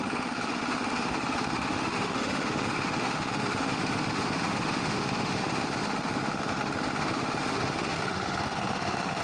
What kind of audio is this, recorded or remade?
remade